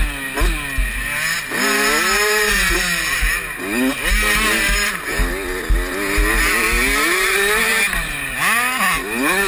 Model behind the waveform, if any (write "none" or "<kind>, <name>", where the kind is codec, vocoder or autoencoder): none